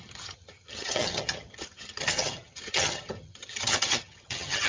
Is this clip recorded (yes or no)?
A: no